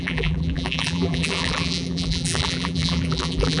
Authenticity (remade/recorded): remade